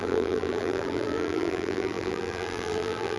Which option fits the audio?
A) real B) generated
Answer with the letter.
B